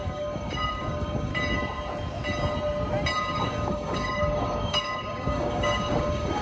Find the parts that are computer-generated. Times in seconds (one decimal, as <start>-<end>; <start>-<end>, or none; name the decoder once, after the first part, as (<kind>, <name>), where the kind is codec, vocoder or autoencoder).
0.0-1.3 (codec, DAC); 3.2-6.4